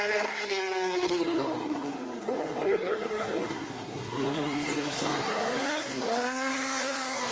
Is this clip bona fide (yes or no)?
no